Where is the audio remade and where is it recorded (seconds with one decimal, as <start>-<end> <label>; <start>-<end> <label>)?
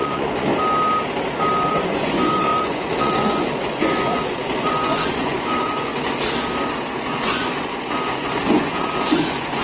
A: 0.0-0.5 remade; 0.5-1.7 recorded; 1.7-5.9 remade; 5.9-6.9 recorded; 6.9-9.6 remade